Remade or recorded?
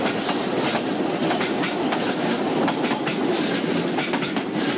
recorded